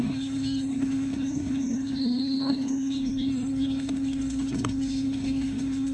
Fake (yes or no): yes